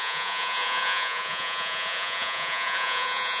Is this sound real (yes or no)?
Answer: no